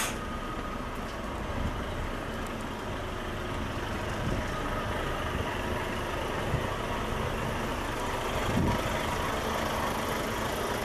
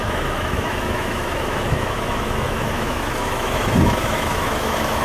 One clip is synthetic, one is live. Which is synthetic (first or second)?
second